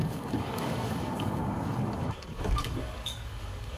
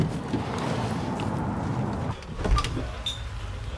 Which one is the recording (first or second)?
second